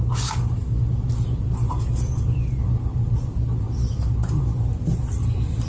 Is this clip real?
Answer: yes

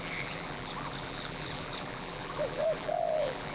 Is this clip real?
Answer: no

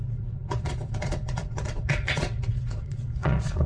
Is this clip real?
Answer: no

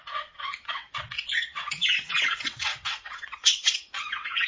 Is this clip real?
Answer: no